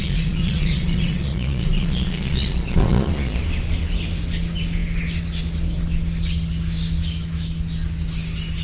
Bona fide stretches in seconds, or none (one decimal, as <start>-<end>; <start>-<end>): 3.4-8.6